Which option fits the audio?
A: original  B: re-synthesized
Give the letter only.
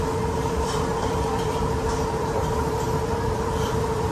B